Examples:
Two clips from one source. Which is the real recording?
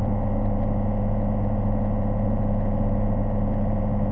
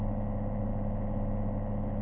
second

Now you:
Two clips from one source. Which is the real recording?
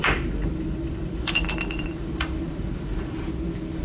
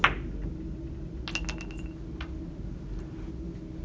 second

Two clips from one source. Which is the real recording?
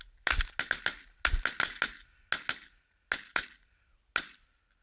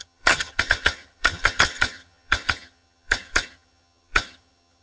first